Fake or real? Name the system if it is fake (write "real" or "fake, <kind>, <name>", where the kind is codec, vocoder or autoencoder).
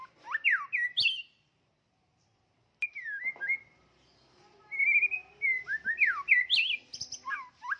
real